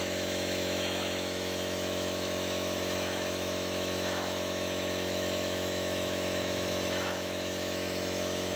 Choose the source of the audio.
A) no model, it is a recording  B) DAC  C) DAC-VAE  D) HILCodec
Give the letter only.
C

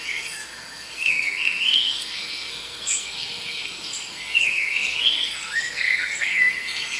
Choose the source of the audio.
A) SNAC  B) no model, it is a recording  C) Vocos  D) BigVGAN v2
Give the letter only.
A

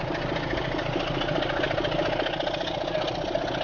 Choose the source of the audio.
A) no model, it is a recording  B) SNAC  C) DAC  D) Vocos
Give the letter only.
A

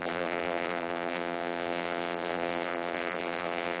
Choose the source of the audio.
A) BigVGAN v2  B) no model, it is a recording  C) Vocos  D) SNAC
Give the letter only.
A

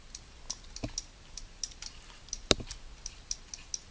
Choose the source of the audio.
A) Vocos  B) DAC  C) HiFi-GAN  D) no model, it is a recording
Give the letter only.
D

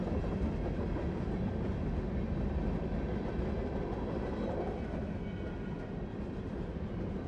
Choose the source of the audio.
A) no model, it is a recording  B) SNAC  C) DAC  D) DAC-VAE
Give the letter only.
A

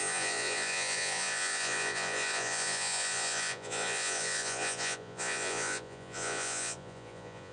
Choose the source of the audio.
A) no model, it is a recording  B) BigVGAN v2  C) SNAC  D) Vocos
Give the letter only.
D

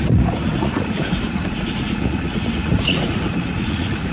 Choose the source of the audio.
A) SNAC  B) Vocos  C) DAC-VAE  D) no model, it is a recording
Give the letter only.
B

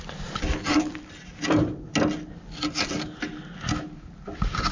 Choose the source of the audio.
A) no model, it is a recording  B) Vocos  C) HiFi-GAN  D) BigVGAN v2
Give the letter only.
A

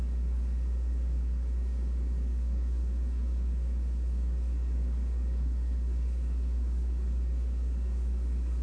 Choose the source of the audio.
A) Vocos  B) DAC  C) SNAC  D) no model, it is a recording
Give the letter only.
B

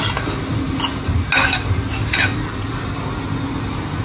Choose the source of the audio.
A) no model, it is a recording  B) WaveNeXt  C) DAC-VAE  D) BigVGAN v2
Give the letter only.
A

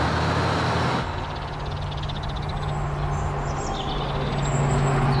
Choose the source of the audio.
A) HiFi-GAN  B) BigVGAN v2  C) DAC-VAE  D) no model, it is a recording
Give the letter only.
D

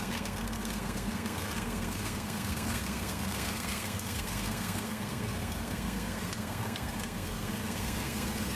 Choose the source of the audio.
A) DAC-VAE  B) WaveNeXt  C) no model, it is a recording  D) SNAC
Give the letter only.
D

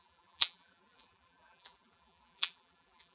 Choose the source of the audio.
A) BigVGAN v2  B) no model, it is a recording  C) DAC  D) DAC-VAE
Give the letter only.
A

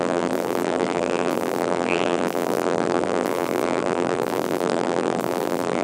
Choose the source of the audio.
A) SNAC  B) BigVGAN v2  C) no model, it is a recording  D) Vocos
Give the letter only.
B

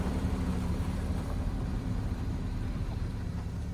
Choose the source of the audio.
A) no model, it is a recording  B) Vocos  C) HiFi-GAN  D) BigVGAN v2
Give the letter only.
D